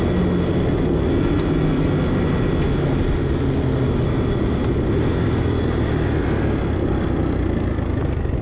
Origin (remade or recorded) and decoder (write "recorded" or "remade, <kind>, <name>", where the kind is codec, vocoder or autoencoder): recorded